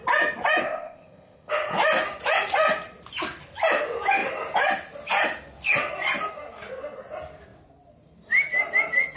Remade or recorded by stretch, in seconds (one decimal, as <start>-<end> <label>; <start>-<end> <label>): 0.0-0.6 recorded; 0.6-1.5 remade; 1.5-9.2 recorded